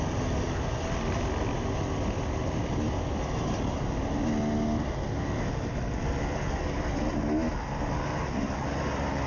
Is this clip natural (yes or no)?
yes